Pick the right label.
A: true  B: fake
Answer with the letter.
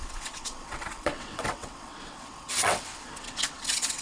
B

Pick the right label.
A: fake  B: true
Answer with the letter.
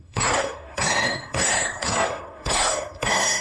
A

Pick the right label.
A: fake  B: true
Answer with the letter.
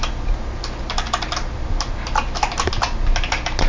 B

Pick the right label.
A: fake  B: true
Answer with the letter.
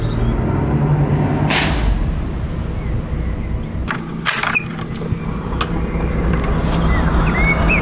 B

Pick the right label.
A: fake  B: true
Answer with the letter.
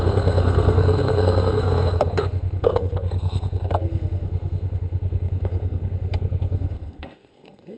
A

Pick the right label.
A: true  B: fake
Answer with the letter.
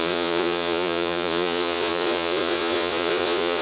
B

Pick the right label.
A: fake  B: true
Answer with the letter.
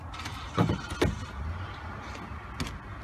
B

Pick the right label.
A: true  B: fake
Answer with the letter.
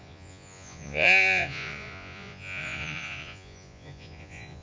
B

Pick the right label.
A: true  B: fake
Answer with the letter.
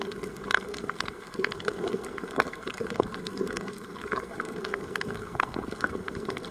B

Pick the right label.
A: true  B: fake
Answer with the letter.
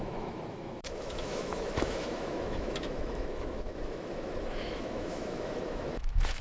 B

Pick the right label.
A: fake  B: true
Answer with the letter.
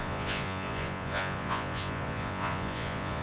A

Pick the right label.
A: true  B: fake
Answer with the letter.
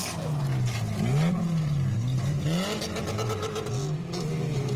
A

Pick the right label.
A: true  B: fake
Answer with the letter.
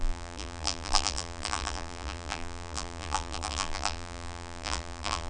B